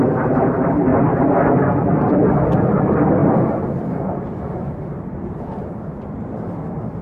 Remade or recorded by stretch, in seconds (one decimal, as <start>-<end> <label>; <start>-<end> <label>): 0.0-0.9 remade; 0.9-2.8 recorded; 2.8-7.0 remade